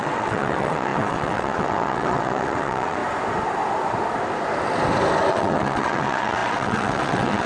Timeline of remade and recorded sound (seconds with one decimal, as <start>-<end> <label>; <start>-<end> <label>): 0.0-3.0 remade; 3.0-5.3 recorded; 5.3-7.5 remade